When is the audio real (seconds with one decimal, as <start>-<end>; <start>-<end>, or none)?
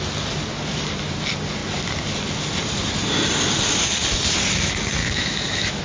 0.0-5.0